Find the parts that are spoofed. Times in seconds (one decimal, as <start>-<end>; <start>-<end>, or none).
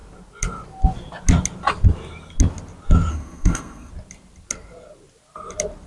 3.1-3.9